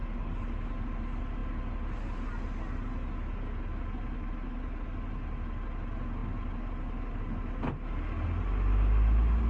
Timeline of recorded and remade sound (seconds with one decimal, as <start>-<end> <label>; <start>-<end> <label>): 0.0-9.5 recorded